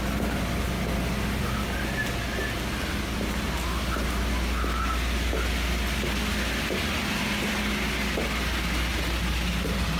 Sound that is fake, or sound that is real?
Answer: real